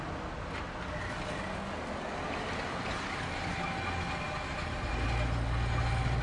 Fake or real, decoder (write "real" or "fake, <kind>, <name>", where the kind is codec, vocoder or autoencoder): real